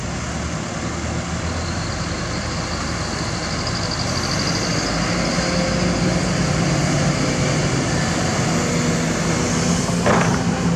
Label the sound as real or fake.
real